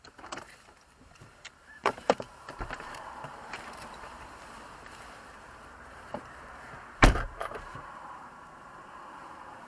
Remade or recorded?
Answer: remade